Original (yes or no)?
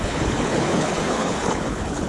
no